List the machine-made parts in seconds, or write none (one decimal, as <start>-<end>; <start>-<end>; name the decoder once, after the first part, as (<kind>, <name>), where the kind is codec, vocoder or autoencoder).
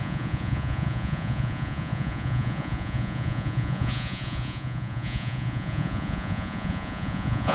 0.0-7.5 (vocoder, Vocos)